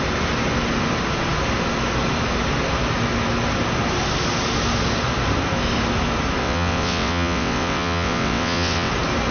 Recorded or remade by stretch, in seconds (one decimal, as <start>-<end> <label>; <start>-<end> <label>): 0.0-6.4 recorded; 6.4-8.9 remade; 8.9-9.3 recorded